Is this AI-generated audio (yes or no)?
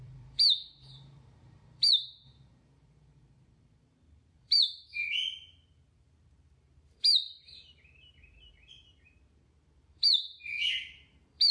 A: yes